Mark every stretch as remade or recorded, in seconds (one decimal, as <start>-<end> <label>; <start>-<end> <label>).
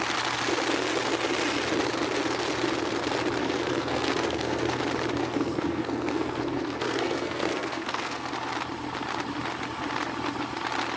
0.0-3.4 recorded; 3.4-4.8 remade; 4.8-5.2 recorded; 5.2-8.3 remade; 8.3-11.0 recorded